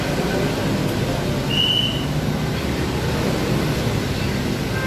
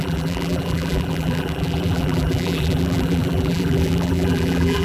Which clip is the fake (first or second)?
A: second